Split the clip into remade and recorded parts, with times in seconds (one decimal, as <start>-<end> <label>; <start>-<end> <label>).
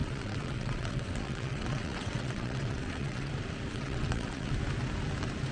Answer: 0.0-3.3 remade; 3.3-3.7 recorded; 3.7-4.5 remade; 4.5-5.5 recorded